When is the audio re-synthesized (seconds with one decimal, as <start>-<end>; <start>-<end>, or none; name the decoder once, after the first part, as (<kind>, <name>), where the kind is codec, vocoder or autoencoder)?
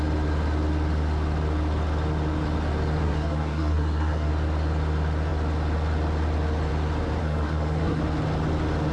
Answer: 3.0-4.3 (codec, SNAC); 7.2-8.0